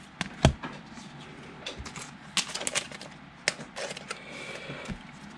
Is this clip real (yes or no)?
yes